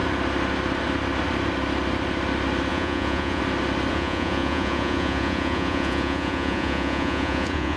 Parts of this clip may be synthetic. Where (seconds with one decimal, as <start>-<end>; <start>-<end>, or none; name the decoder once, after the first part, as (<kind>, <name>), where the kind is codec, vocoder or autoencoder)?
2.7-3.4 (vocoder, Vocos); 3.9-7.8